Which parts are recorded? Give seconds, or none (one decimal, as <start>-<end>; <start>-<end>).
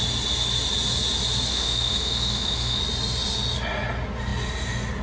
0.0-1.5; 2.8-5.0